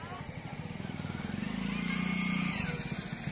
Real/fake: real